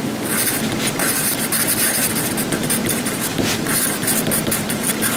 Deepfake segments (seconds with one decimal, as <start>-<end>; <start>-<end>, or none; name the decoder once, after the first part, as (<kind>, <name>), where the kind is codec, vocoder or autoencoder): 1.0-2.3 (vocoder, BigVGAN v2); 2.8-3.8